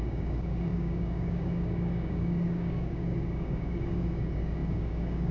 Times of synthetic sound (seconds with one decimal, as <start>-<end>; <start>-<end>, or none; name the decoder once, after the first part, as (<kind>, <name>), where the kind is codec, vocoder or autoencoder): 0.0-5.3 (codec, DAC)